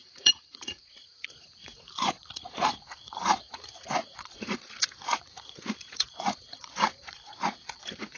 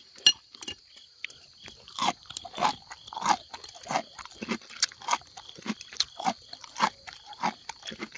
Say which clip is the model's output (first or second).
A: first